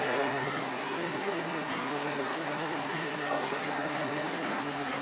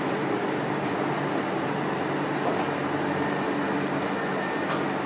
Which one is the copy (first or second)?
first